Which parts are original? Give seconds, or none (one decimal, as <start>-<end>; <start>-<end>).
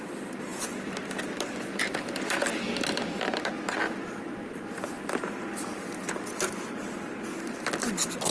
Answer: 0.0-8.3